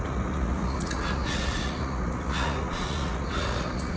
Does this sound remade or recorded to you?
remade